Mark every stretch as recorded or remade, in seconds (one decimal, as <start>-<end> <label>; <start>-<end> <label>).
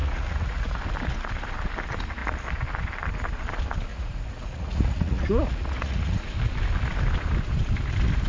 0.0-0.8 remade; 0.8-3.9 recorded; 3.9-6.3 remade; 6.3-8.3 recorded